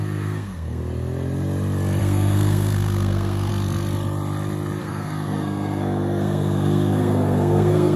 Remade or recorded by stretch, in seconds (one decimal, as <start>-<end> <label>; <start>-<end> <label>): 0.0-0.8 remade; 0.8-2.0 recorded; 2.0-3.5 remade; 3.5-4.8 recorded; 4.8-8.0 remade